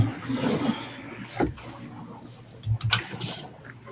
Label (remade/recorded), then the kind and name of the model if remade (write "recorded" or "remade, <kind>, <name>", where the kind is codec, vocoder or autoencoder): recorded